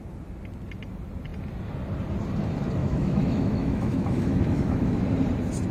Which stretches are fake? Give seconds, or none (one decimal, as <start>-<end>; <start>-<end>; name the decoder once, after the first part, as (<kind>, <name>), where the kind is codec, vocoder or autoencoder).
2.8-5.0 (autoencoder, DAC-VAE)